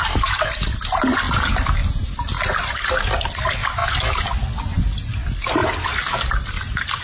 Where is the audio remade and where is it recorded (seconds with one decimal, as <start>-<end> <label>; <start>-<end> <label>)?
0.0-7.0 recorded